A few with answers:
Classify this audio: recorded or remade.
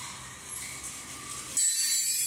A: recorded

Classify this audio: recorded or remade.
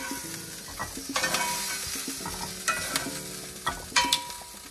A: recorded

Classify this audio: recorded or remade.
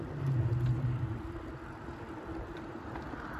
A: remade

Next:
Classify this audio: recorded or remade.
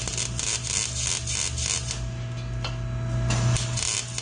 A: recorded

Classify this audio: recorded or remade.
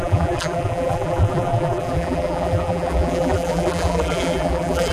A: remade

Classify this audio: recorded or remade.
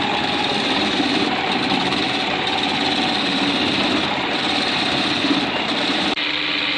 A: remade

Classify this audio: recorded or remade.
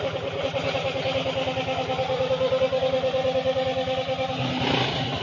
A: recorded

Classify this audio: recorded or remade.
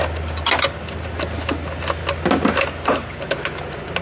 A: recorded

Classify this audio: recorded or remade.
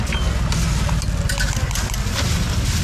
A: recorded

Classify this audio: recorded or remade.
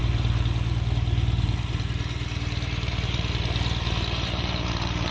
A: remade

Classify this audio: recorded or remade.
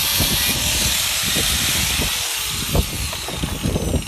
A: recorded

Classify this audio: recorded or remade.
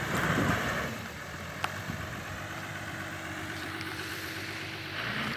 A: remade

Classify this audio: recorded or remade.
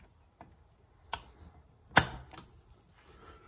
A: recorded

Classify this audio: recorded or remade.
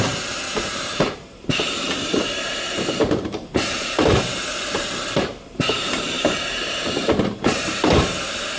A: remade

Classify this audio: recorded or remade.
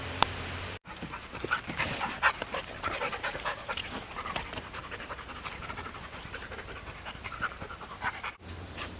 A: remade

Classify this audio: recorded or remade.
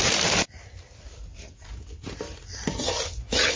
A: recorded